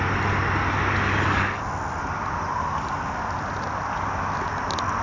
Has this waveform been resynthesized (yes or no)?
no